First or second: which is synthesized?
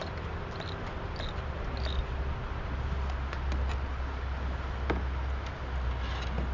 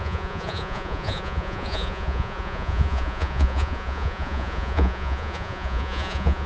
second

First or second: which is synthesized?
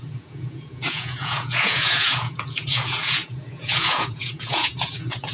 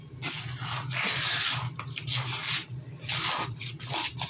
first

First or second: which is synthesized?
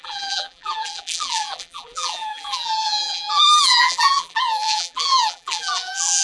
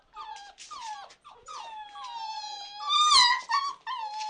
first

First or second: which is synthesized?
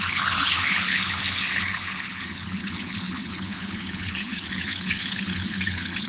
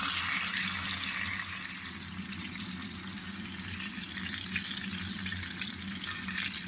first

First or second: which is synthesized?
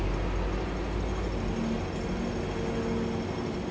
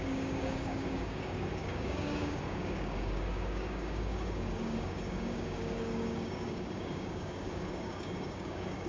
second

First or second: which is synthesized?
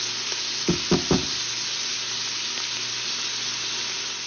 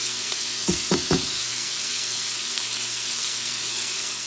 second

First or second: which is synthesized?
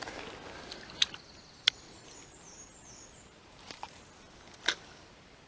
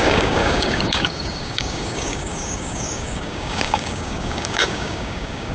second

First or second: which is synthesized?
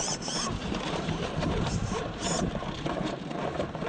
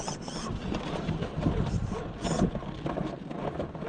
first